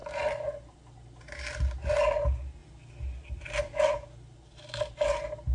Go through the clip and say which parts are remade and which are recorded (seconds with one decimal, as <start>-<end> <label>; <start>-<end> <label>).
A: 0.0-5.5 recorded

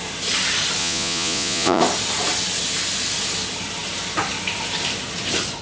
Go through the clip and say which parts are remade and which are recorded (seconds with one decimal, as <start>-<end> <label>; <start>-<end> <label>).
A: 0.0-0.8 recorded; 0.8-1.8 remade; 1.8-5.6 recorded

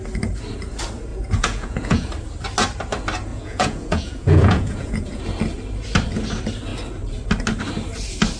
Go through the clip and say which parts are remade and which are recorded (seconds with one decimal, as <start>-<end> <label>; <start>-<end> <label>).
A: 0.0-1.1 recorded; 1.1-2.1 remade; 2.1-3.3 recorded; 3.3-5.2 remade; 5.2-8.4 recorded

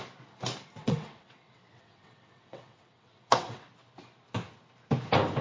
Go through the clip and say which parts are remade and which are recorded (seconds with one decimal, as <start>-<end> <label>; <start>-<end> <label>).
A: 0.0-0.8 recorded; 0.8-3.7 remade; 3.7-5.4 recorded

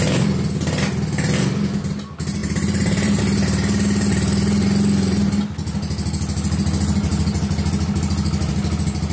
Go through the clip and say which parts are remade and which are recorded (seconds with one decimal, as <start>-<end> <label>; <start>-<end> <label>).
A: 0.0-2.4 recorded; 2.4-3.2 remade; 3.2-9.1 recorded

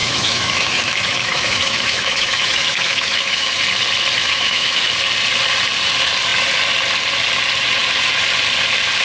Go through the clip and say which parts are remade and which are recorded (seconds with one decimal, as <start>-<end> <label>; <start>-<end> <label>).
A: 0.0-3.6 remade; 3.6-4.2 recorded; 4.2-4.9 remade; 4.9-9.0 recorded

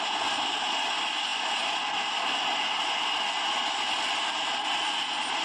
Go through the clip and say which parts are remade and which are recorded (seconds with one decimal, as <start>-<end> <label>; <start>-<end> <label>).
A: 0.0-5.4 recorded